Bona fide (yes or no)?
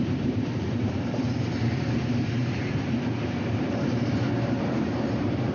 no